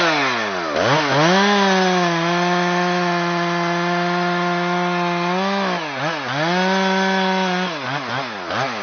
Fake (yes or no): no